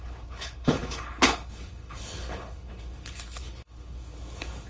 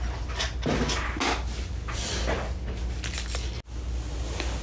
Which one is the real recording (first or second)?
second